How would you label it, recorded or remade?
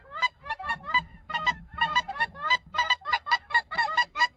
remade